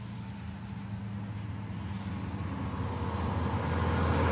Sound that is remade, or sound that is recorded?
recorded